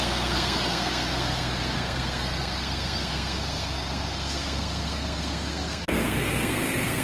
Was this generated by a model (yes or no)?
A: yes